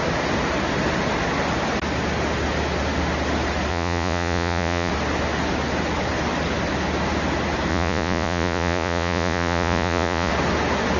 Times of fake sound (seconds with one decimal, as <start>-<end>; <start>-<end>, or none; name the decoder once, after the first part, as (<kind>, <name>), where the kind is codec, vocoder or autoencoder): 3.7-4.9 (vocoder, Vocos); 7.7-10.3